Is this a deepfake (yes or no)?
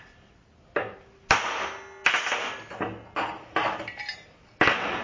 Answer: no